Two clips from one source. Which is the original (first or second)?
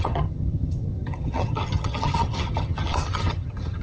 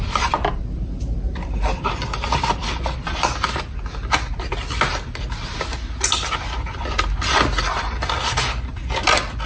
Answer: second